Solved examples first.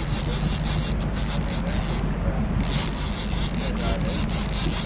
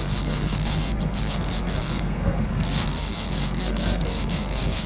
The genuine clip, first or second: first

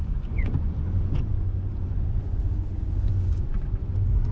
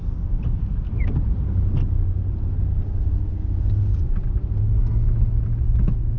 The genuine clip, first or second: second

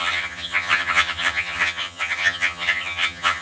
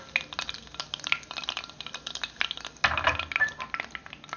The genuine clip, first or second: second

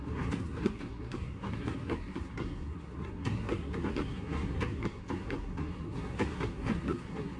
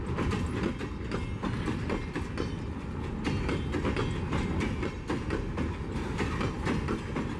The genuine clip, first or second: second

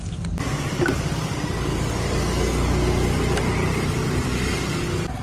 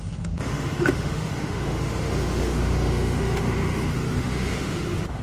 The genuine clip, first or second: first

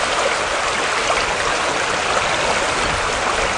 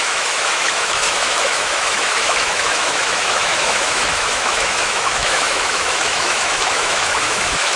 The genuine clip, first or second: first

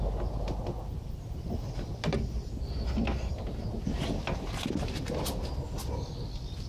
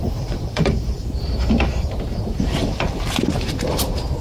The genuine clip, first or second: first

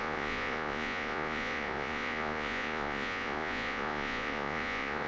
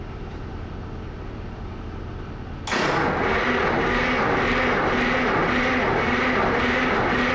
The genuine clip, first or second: second